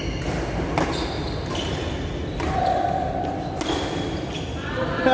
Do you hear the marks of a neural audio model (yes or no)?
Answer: no